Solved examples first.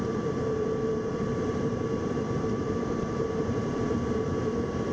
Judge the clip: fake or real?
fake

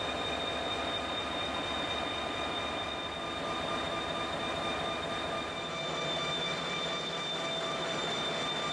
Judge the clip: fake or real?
real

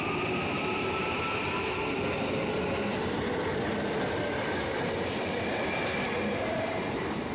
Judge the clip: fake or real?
real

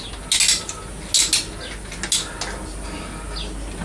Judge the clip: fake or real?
real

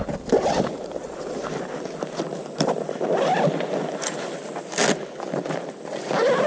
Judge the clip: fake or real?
real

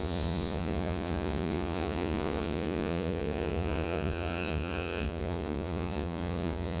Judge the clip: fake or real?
fake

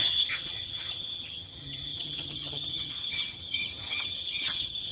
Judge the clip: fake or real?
fake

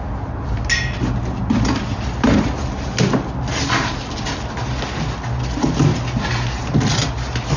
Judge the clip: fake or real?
real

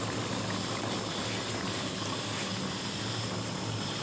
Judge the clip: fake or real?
real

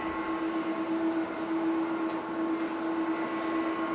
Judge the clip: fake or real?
real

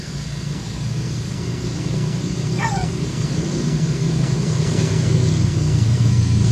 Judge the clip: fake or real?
fake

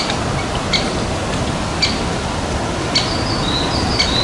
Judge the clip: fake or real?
real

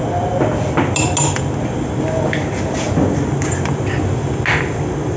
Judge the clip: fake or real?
real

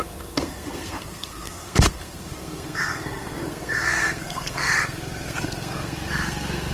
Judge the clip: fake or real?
fake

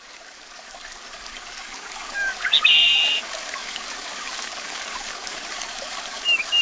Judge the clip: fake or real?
fake